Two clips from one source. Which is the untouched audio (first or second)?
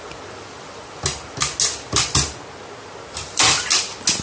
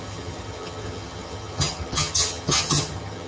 first